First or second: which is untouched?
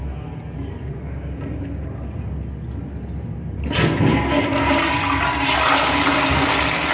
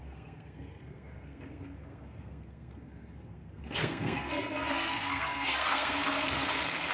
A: first